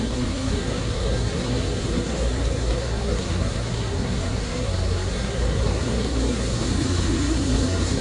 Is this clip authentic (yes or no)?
no